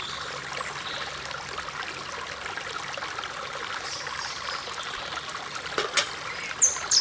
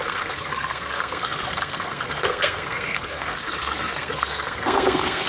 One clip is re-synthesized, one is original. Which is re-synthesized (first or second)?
second